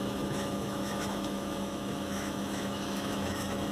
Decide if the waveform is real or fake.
fake